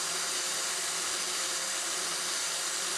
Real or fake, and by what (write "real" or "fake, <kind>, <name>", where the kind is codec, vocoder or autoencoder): real